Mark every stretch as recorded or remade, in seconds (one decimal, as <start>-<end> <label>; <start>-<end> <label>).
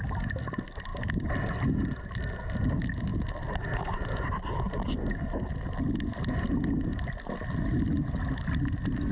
0.0-9.1 recorded